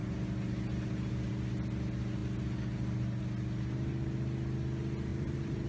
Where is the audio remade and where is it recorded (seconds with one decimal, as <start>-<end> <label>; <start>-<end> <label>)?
0.0-5.1 recorded; 5.1-5.7 remade